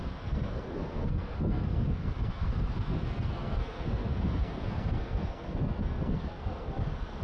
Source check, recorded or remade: remade